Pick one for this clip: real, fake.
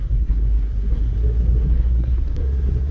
fake